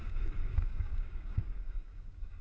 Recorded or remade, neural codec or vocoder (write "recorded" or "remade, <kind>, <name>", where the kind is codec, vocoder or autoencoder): remade, codec, DAC